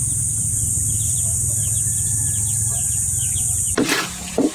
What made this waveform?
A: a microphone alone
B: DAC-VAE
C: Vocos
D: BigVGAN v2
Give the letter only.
A